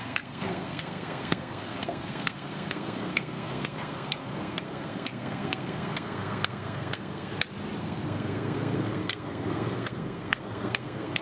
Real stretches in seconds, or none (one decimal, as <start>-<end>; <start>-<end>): 7.3-7.8